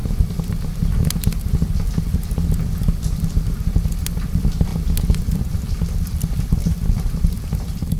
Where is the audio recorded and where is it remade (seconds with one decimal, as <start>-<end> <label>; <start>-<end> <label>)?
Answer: 0.0-3.6 recorded; 3.6-4.7 remade; 4.7-5.2 recorded; 5.2-8.0 remade